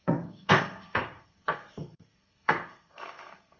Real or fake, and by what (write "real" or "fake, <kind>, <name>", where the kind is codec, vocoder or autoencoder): fake, codec, SNAC